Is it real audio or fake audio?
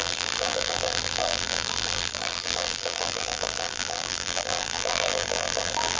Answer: fake